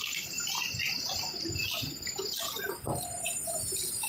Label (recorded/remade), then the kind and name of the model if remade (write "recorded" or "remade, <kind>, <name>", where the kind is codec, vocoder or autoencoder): recorded